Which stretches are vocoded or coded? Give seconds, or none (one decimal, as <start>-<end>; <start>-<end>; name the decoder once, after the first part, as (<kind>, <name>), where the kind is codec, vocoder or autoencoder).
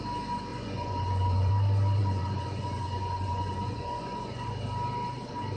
0.5-1.5 (vocoder, Vocos); 2.0-4.5